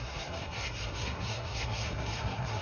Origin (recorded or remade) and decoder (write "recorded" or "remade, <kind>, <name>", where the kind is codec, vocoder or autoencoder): remade, codec, SNAC